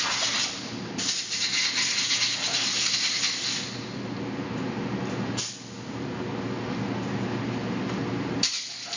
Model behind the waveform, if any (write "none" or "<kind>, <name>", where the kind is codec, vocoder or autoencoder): none